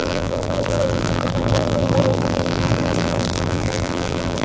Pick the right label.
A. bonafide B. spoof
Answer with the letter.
B